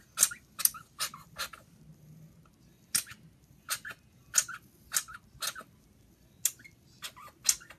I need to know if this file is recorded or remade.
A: recorded